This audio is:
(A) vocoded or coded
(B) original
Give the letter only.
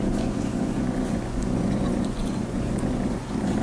A